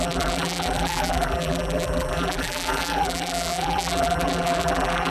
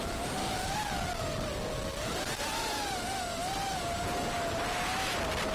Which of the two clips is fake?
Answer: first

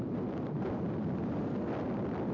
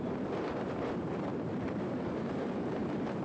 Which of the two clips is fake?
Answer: second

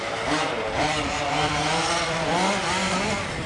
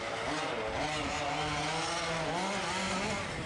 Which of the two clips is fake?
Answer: first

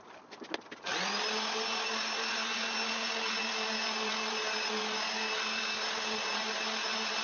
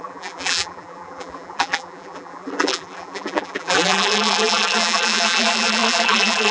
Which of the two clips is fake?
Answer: second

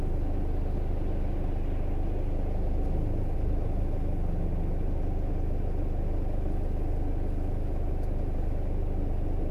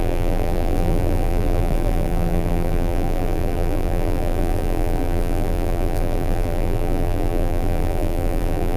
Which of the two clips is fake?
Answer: second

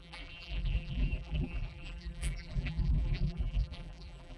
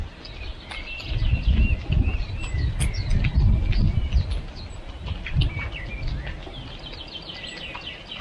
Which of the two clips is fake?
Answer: first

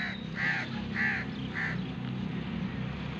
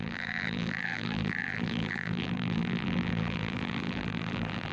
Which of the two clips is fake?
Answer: second